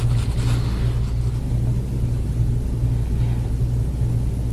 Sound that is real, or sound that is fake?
real